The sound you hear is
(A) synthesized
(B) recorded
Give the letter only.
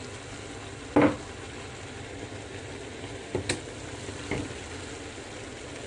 B